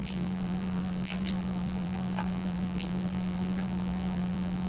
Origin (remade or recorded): remade